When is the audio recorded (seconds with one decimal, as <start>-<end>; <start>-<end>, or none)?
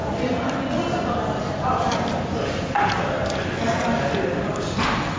0.6-5.2